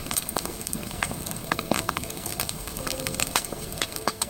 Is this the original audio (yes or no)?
no